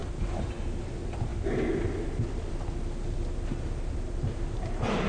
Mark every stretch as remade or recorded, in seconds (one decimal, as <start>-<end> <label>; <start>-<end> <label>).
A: 0.0-5.1 recorded